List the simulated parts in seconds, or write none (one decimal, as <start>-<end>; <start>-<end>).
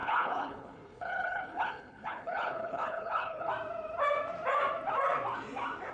0.0-3.5